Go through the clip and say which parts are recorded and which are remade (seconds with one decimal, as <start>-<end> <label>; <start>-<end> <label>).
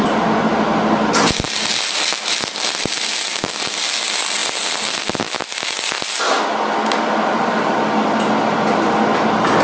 0.0-9.6 recorded